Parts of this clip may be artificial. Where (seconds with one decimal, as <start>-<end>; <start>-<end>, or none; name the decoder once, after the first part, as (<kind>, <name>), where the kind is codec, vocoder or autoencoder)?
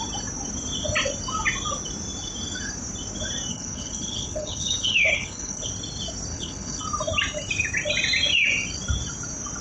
3.5-5.7 (codec, HILCodec); 6.3-6.8